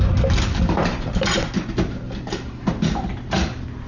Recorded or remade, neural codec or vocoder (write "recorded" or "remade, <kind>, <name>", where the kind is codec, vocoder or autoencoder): recorded